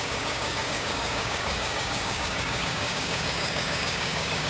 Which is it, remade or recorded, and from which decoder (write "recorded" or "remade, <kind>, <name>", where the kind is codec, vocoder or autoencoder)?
remade, codec, DAC